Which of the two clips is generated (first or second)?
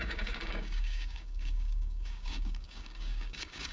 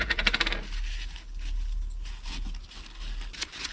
first